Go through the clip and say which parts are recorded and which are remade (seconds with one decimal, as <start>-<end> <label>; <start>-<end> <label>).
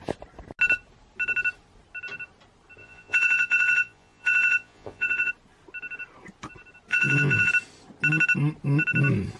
0.0-2.8 recorded; 2.8-5.3 remade; 5.3-6.9 recorded; 6.9-7.5 remade; 7.5-9.4 recorded